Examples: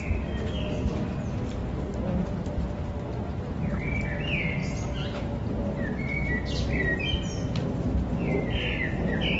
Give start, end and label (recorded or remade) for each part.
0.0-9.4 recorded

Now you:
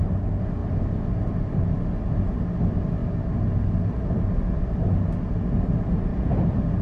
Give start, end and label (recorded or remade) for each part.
0.0-6.1 recorded; 6.1-6.8 remade

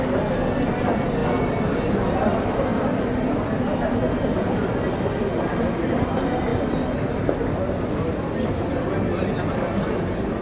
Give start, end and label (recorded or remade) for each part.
0.0-10.4 recorded

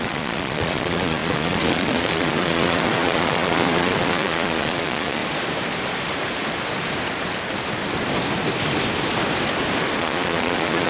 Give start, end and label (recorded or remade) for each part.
0.0-5.2 remade; 5.2-10.0 recorded; 10.0-10.9 remade